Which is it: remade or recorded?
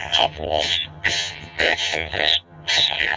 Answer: remade